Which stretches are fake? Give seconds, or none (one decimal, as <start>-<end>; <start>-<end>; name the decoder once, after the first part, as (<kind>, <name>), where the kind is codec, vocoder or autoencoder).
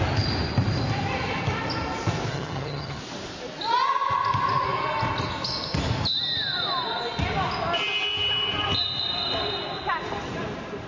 2.3-3.0 (vocoder, HiFi-GAN)